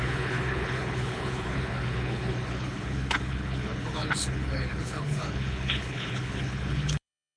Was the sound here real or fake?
fake